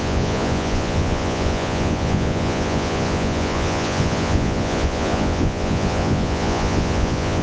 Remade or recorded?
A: remade